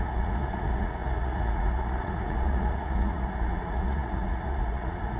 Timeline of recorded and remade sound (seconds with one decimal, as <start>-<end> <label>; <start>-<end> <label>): 0.0-5.2 remade